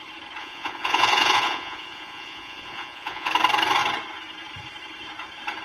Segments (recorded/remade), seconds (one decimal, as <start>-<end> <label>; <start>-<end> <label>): 0.0-0.4 recorded; 0.4-3.3 remade; 3.3-5.6 recorded